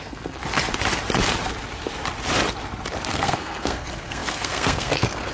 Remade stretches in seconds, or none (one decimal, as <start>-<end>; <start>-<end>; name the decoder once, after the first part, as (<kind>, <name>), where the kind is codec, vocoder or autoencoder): 0.0-0.4 (codec, SNAC); 3.1-5.3